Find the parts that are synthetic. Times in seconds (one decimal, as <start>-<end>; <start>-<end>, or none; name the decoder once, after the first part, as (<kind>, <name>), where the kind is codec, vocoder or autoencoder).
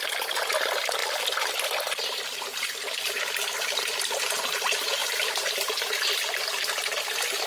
5.0-5.6 (vocoder, BigVGAN v2)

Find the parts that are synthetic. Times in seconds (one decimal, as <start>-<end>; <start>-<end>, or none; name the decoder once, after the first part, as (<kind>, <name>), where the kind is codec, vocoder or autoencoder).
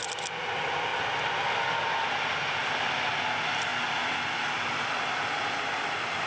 none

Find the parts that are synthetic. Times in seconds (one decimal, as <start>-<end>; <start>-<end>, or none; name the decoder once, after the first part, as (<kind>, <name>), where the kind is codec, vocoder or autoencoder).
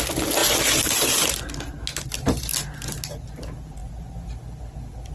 none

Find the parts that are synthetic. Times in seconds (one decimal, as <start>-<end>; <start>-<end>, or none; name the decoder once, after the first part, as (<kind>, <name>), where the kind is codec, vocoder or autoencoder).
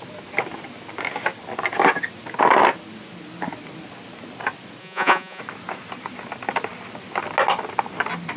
4.8-5.4 (vocoder, Vocos)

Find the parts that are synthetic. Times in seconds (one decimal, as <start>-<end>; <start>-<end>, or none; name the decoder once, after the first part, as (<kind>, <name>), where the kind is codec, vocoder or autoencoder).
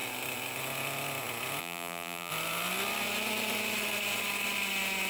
1.6-2.3 (vocoder, BigVGAN v2)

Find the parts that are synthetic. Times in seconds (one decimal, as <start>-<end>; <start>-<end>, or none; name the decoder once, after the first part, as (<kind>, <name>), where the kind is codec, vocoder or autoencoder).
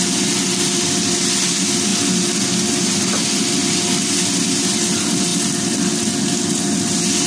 none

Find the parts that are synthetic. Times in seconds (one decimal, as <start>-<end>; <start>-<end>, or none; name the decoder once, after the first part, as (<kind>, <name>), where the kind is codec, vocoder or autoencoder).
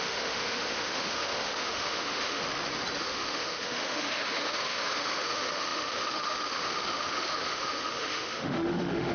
0.0-2.4 (autoencoder, DAC-VAE); 3.0-9.1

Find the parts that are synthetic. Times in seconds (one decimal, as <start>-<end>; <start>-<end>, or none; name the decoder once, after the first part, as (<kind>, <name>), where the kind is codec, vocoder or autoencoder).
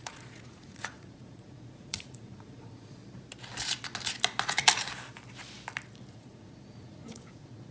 0.0-3.0 (vocoder, Vocos); 6.1-7.7